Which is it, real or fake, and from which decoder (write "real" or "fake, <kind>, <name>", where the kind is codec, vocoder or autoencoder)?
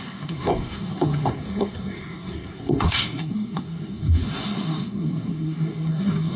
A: fake, codec, SNAC